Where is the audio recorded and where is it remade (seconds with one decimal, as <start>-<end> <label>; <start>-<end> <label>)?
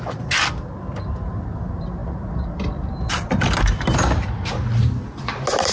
0.0-5.7 recorded